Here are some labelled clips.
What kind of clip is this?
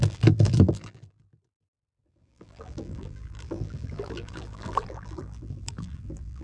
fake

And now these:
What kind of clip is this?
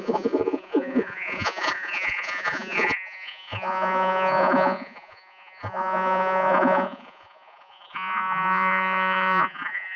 fake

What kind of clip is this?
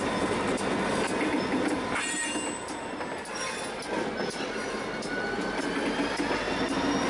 real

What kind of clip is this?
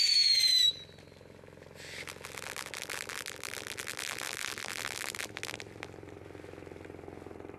real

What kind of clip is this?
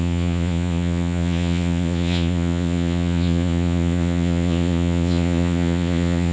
fake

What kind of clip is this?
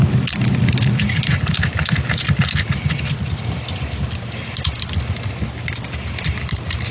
real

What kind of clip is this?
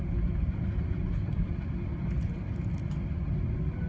real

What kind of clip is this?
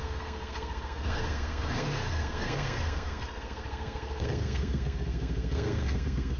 fake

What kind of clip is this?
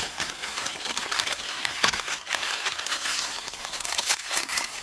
fake